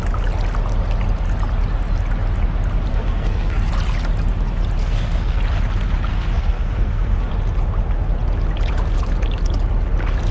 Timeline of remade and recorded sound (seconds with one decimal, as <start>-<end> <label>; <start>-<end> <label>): 0.0-2.9 recorded; 2.9-3.7 remade; 3.7-4.8 recorded; 4.8-5.4 remade; 5.4-6.1 recorded; 6.1-7.3 remade; 7.3-10.3 recorded